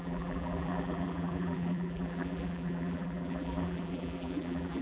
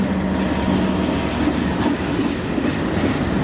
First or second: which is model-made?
first